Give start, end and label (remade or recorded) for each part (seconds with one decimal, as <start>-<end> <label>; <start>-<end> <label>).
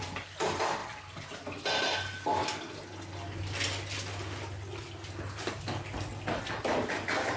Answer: 0.0-7.4 recorded